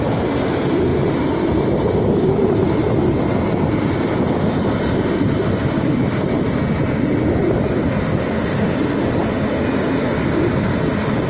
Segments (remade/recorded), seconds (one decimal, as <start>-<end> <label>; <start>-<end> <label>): 0.0-11.3 recorded